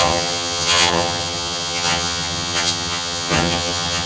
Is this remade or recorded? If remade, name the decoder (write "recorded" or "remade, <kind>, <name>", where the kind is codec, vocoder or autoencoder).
remade, vocoder, HiFi-GAN